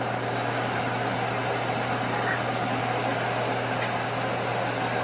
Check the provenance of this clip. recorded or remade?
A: recorded